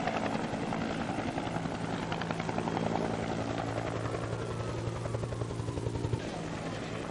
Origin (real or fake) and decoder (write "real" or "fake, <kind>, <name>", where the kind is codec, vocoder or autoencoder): real